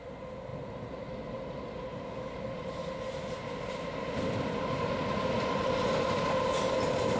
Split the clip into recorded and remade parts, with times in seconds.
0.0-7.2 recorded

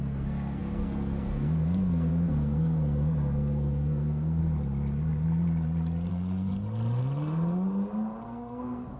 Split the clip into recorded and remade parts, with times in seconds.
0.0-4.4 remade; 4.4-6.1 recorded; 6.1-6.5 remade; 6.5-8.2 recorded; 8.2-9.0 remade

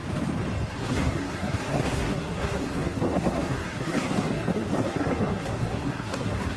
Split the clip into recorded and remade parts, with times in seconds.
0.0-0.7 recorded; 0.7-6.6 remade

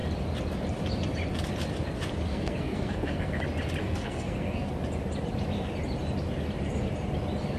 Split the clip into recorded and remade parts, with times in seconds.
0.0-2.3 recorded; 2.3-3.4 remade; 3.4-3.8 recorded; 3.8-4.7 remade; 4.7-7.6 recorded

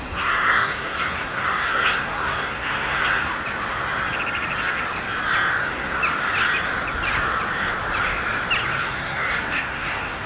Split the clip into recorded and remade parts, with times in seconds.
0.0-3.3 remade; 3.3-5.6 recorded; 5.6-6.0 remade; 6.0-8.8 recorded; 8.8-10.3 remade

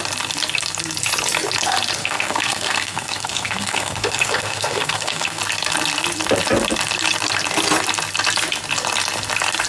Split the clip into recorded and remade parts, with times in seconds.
0.0-2.0 recorded; 2.0-5.4 remade; 5.4-9.7 recorded

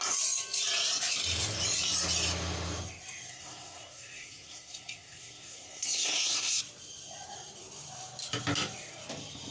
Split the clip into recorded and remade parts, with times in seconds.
0.0-3.3 recorded; 3.3-6.6 remade; 6.6-9.5 recorded

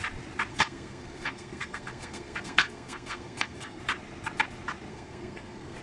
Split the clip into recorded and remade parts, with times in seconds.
0.0-0.5 recorded; 0.5-3.8 remade; 3.8-4.9 recorded; 4.9-5.8 remade